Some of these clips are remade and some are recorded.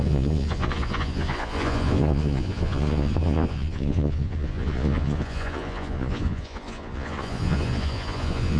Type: remade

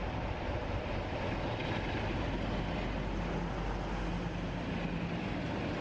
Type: recorded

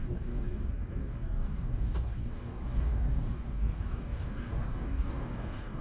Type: remade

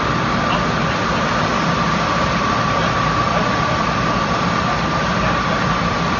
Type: recorded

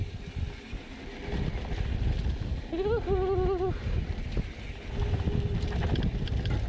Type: recorded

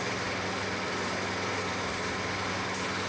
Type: recorded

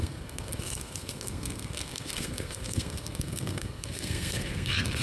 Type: remade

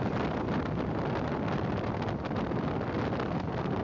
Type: recorded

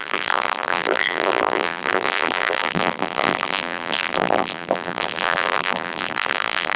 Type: remade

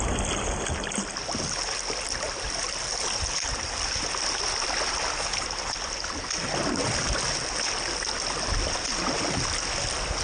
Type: recorded